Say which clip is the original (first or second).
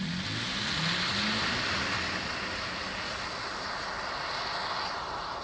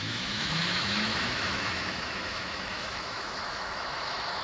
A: first